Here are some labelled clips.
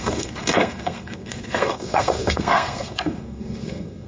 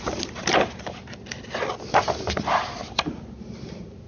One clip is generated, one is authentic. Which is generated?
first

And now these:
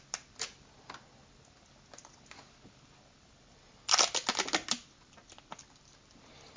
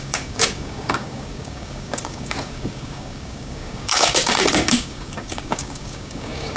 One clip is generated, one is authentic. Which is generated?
second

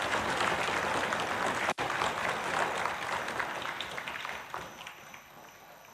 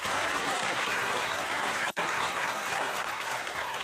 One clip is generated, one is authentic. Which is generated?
second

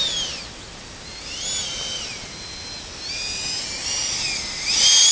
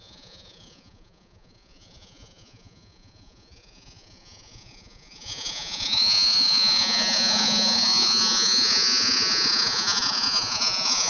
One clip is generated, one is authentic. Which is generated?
second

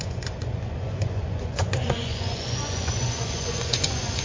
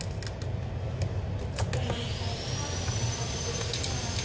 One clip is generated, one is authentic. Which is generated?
first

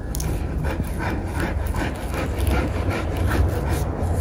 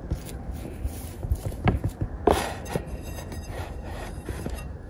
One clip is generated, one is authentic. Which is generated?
second